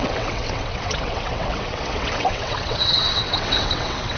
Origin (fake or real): fake